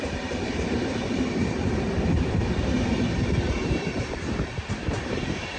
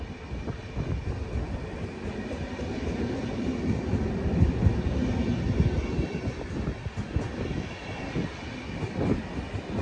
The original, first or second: second